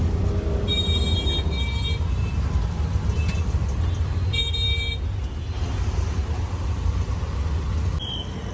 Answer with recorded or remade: recorded